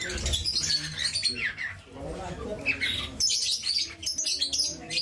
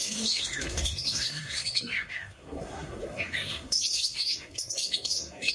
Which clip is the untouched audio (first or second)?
first